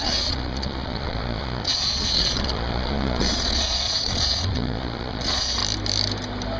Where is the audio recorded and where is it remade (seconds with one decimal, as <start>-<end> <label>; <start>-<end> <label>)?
0.0-5.6 remade; 5.6-6.6 recorded